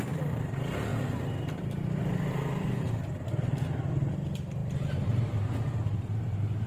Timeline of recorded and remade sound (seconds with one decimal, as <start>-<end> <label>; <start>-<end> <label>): 0.0-6.7 recorded